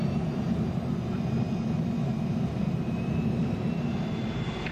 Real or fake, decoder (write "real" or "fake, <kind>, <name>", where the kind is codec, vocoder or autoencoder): real